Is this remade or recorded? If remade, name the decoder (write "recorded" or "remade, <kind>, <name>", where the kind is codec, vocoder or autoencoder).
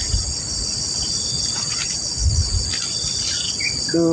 recorded